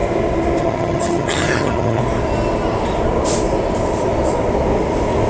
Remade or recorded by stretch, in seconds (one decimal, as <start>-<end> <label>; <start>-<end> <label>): 0.0-0.6 recorded; 0.6-2.0 remade; 2.0-5.3 recorded